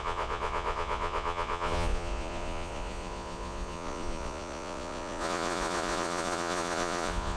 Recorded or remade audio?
remade